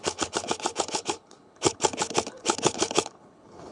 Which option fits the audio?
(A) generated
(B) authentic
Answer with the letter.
A